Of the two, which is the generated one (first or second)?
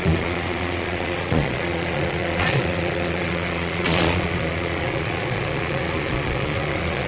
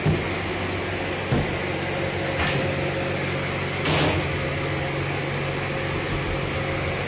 first